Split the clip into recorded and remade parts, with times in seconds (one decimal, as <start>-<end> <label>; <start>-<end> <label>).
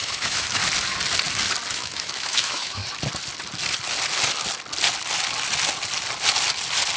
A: 0.0-0.6 remade; 0.6-1.7 recorded; 1.7-2.8 remade; 2.8-7.0 recorded